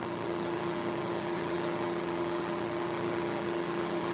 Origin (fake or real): fake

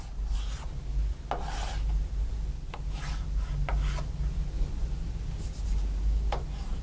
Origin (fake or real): real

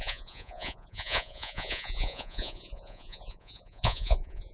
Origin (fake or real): fake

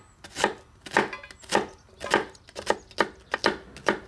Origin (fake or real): real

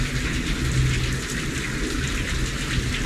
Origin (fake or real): real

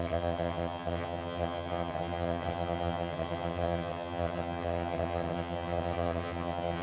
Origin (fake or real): fake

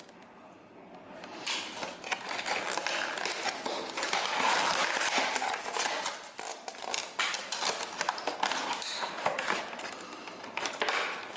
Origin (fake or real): real